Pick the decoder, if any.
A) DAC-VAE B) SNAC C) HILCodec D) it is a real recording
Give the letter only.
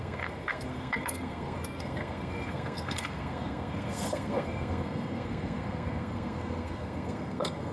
B